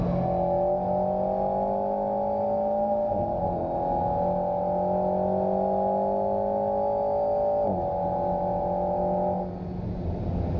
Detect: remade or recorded recorded